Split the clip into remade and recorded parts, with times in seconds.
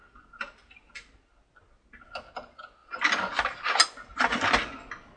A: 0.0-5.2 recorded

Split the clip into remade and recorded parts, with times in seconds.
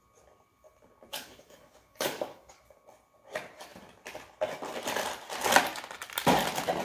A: 0.0-1.1 recorded; 1.1-2.6 remade; 2.6-6.8 recorded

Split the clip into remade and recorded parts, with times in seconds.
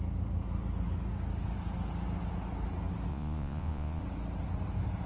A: 0.0-3.1 recorded; 3.1-4.0 remade; 4.0-5.1 recorded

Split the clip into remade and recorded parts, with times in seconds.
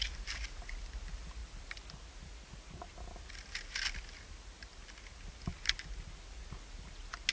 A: 0.0-7.3 recorded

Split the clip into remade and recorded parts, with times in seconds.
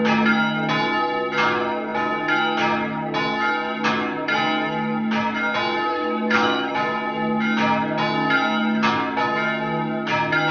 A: 0.0-5.9 recorded; 5.9-6.7 remade; 6.7-10.5 recorded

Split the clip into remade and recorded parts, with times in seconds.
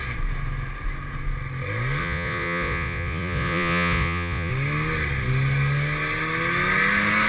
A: 0.0-2.0 recorded; 2.0-4.5 remade; 4.5-7.3 recorded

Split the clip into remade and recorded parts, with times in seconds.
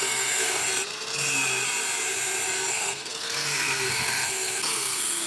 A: 0.0-0.6 remade; 0.6-2.7 recorded; 2.7-5.3 remade